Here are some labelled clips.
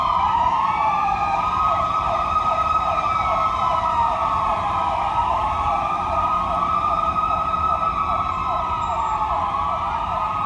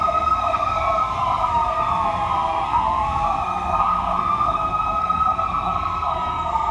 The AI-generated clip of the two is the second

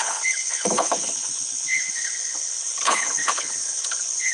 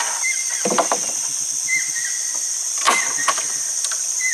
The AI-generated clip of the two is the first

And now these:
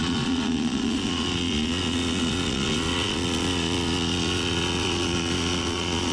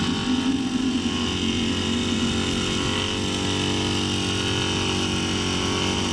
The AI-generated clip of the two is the first